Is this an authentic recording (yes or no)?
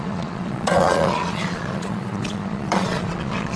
no